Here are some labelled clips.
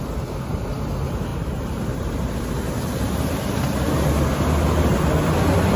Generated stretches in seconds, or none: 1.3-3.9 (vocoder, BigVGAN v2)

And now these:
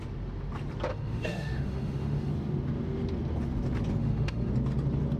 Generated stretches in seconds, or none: 0.9-2.3 (autoencoder, DAC-VAE); 4.0-4.5

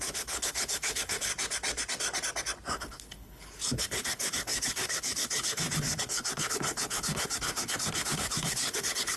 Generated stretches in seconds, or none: 0.0-1.3 (codec, HILCodec); 2.7-9.2

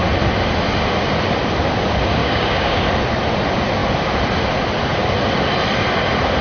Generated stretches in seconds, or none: 2.2-2.8 (codec, DAC)

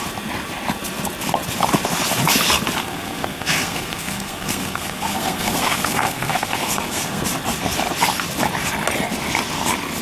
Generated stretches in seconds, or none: 2.8-7.2 (codec, SNAC)

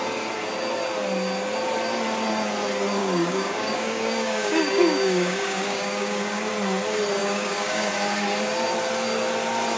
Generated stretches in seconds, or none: 3.0-6.5 (codec, DAC); 7.2-7.9